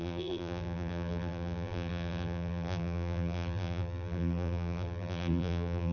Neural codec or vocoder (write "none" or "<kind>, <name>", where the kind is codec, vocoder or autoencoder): vocoder, BigVGAN v2